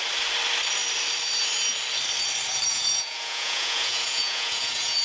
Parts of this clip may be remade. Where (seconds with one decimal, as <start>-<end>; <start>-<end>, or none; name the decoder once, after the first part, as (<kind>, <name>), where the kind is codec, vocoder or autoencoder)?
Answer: 2.7-5.0 (vocoder, Vocos)